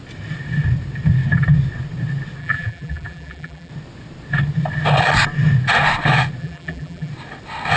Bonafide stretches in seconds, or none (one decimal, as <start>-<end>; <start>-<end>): 0.0-2.4; 3.7-6.4; 7.1-7.8